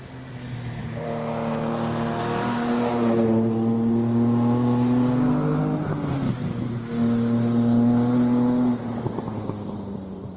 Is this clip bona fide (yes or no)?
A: yes